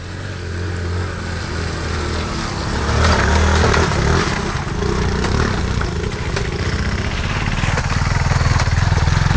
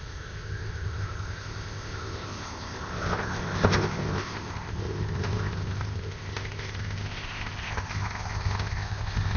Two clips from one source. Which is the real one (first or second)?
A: first